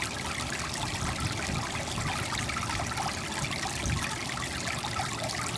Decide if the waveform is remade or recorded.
recorded